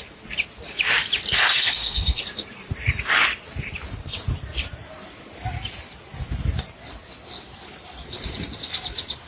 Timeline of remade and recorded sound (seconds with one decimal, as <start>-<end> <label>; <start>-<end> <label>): 0.0-1.5 recorded; 1.5-2.2 remade; 2.2-9.3 recorded